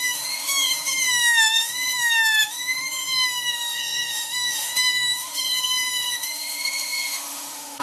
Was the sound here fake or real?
fake